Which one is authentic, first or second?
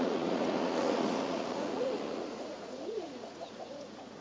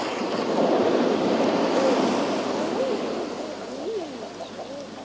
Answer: second